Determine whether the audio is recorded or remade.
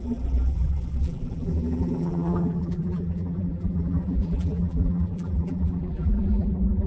remade